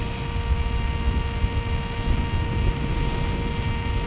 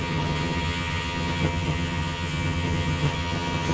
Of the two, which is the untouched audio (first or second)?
first